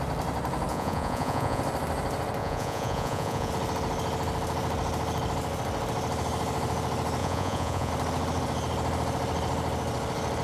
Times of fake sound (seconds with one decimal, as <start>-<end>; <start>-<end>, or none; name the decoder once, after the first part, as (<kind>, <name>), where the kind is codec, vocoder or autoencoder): 0.7-1.6 (vocoder, Vocos); 2.4-3.5; 7.2-7.9